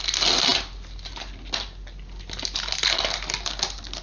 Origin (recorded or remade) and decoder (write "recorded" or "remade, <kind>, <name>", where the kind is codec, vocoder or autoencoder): recorded